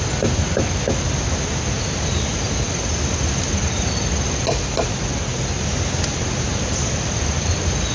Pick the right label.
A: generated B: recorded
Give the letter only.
B